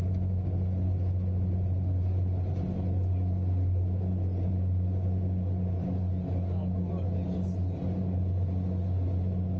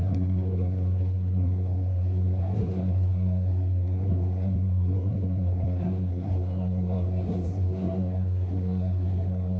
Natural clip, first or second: first